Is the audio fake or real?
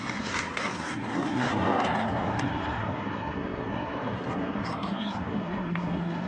fake